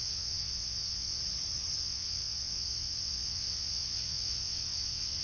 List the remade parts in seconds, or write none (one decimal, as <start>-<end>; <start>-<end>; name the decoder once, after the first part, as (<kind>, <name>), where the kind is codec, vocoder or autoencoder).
0.0-1.2 (vocoder, WaveNeXt); 1.8-5.2